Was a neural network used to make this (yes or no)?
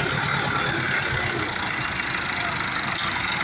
no